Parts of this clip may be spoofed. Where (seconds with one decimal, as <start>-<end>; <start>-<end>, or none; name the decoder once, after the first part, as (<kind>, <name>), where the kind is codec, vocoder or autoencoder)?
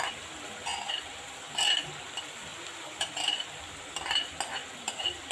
0.7-1.5 (vocoder, BigVGAN v2); 2.5-4.0; 4.6-5.3